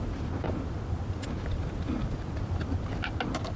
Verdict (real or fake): real